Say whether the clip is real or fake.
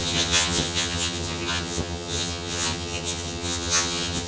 fake